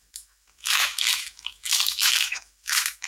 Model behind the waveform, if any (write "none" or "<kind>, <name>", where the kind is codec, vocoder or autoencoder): autoencoder, DAC-VAE